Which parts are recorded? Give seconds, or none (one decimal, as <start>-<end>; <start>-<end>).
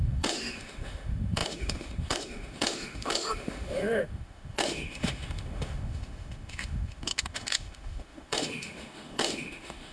none